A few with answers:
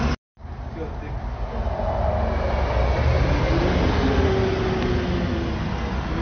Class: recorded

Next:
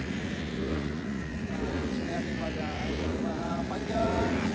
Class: remade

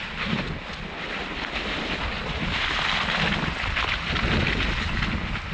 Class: recorded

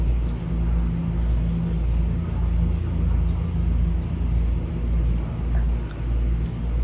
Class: recorded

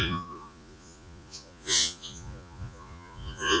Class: remade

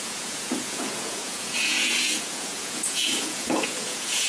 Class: remade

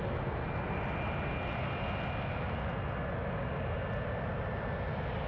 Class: recorded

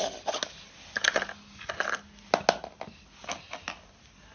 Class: recorded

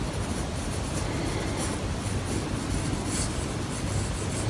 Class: recorded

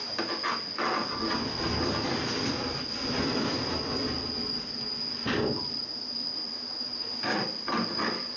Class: recorded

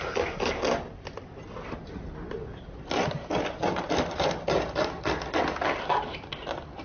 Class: recorded